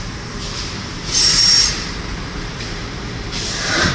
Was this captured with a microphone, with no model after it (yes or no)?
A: no